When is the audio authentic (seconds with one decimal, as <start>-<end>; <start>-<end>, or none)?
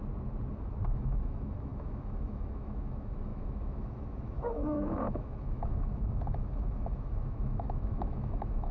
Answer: 0.0-0.9